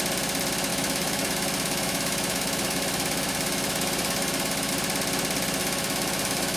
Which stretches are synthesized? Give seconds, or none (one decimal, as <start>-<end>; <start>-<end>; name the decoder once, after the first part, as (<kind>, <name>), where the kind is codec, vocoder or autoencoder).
0.7-4.7 (autoencoder, DAC-VAE); 5.6-6.6